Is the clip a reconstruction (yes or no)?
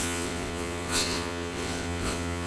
yes